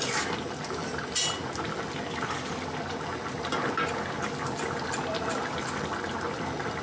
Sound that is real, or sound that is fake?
real